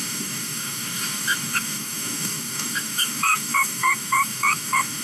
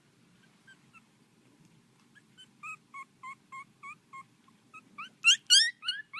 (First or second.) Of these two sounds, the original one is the second